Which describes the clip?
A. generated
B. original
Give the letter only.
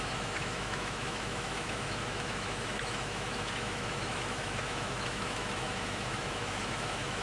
A